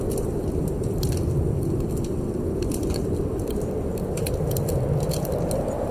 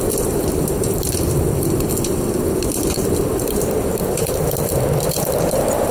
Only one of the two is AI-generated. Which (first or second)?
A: second